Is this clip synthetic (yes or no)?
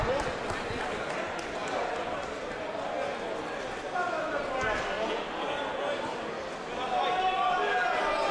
no